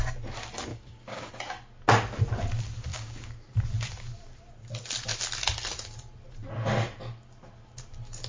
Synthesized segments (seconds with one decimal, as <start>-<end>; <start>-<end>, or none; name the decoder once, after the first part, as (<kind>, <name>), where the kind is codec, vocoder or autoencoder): 0.7-1.3 (codec, DAC); 2.9-3.5